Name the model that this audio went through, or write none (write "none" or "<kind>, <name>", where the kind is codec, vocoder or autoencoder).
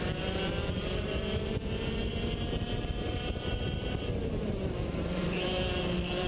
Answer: vocoder, BigVGAN v2